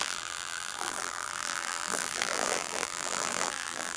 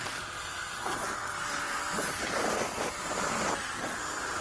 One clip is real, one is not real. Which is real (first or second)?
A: second